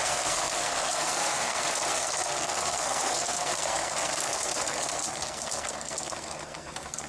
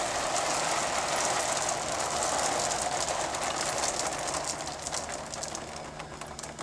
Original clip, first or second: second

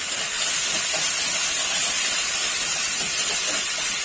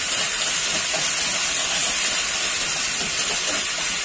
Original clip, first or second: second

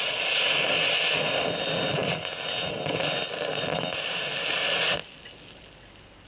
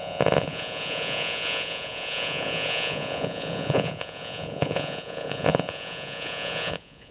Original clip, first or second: first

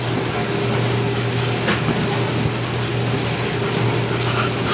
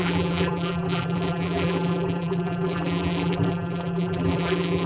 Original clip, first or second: first